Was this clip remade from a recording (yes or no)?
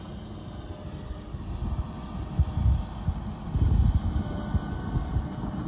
no